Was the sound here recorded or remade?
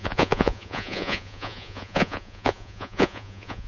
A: remade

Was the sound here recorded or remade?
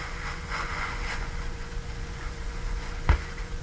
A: remade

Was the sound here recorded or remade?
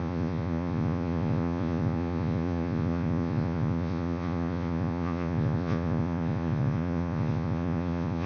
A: remade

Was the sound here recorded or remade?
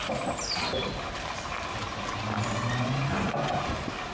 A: recorded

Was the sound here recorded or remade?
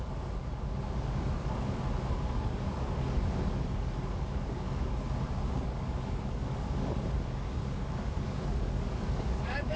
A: remade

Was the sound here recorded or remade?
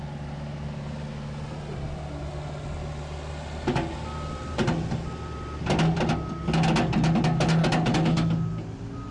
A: recorded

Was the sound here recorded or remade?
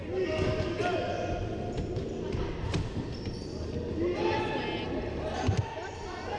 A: recorded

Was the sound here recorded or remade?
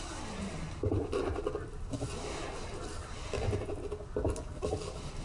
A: recorded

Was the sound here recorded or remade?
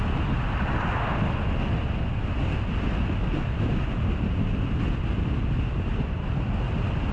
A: recorded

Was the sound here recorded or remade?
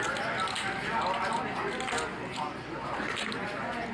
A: recorded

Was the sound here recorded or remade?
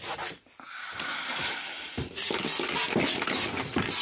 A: recorded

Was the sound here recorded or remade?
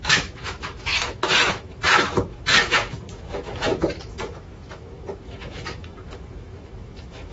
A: remade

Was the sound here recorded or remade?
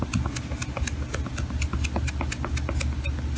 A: recorded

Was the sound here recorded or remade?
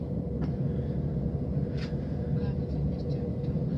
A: recorded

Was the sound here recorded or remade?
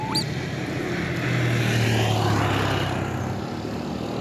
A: recorded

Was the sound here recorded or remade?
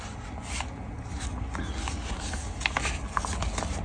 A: recorded